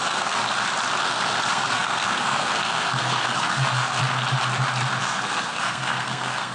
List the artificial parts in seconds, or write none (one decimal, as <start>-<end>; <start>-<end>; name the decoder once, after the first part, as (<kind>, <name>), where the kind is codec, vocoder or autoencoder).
0.0-0.4 (codec, SNAC); 1.0-4.0; 5.0-6.5